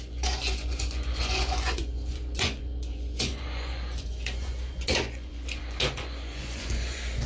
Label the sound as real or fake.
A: fake